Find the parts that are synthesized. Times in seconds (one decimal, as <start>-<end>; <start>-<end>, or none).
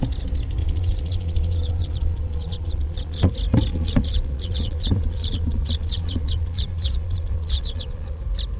0.6-3.3; 3.7-8.2